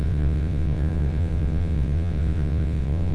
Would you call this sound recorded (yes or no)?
no